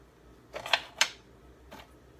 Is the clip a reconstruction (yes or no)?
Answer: no